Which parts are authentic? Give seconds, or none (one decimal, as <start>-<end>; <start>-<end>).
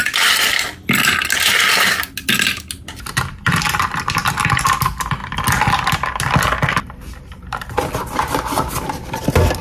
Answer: 0.0-9.6